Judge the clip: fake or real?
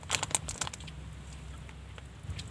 real